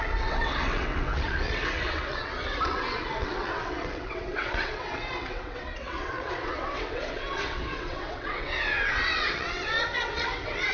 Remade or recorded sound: remade